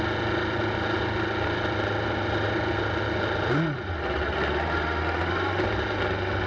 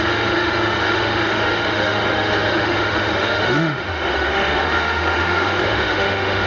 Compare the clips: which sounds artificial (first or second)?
second